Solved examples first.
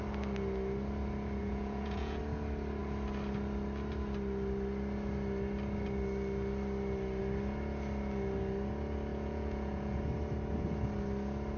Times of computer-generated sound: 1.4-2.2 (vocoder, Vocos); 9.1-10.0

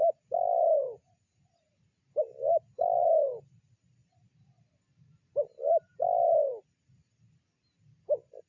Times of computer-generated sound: none

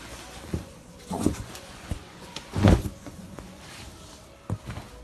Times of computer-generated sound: 0.6-3.6 (vocoder, Vocos)

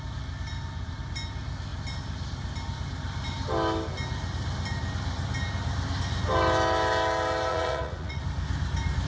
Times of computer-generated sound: 7.5-8.2 (vocoder, Vocos)

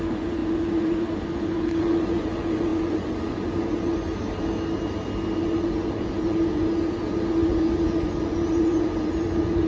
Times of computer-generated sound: 0.0-4.1 (vocoder, Vocos); 5.4-9.7

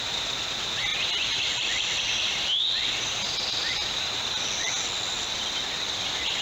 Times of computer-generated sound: none